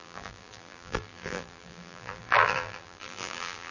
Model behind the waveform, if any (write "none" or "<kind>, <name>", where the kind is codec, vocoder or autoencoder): vocoder, BigVGAN v2